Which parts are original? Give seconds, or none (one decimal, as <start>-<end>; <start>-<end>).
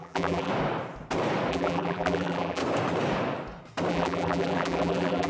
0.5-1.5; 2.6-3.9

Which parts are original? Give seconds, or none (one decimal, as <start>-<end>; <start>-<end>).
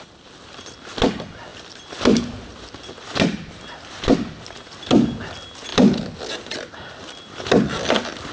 0.0-1.5; 4.4-5.7; 7.3-8.3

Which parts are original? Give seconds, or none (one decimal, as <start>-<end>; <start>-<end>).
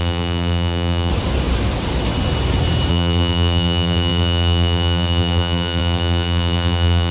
1.1-2.9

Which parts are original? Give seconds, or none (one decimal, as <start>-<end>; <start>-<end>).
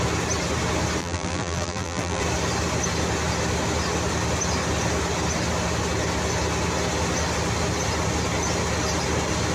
0.0-1.0; 2.2-9.5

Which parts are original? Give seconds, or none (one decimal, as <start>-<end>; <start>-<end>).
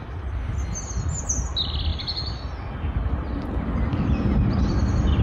0.5-1.9; 2.5-3.9; 4.8-5.2